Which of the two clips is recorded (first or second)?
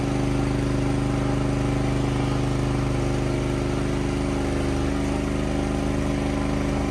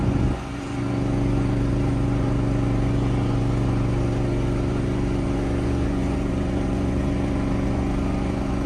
first